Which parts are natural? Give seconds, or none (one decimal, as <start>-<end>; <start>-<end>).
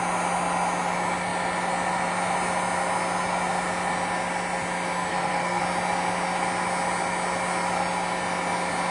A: 0.0-5.1; 5.6-8.9